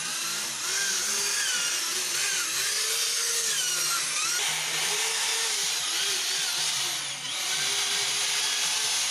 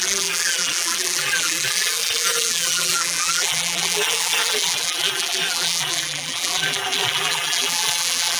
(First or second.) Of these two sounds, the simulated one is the second